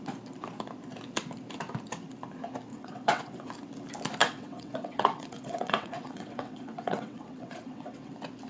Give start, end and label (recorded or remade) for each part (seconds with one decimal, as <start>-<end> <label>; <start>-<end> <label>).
0.0-2.7 recorded; 2.7-3.5 remade; 3.5-4.2 recorded; 4.2-8.1 remade; 8.1-8.5 recorded